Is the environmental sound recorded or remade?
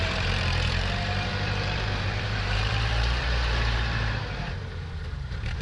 remade